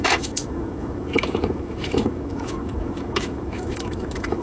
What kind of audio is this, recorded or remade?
remade